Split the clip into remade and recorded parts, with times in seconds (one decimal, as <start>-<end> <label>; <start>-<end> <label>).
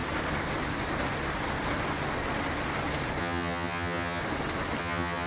0.0-3.2 recorded; 3.2-4.2 remade; 4.2-4.8 recorded; 4.8-5.3 remade